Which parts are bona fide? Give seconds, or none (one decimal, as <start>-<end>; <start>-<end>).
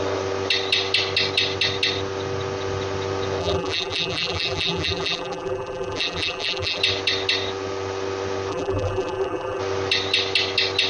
0.0-3.4; 6.8-8.5; 9.6-10.9